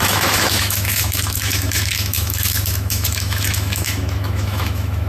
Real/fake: fake